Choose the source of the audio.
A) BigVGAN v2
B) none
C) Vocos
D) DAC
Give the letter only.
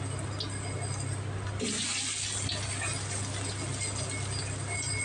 B